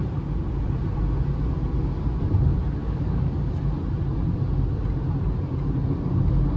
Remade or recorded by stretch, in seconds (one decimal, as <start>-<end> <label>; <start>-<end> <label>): 0.0-2.8 recorded; 2.8-3.5 remade; 3.5-6.6 recorded